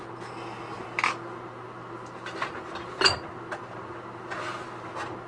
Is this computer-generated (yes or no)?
no